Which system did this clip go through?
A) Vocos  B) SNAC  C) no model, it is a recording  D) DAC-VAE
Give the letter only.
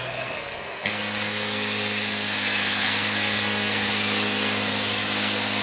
B